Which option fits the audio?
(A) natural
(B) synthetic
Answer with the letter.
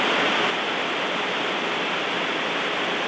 A